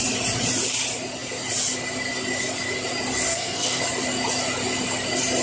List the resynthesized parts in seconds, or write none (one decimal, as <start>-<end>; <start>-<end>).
3.3-3.8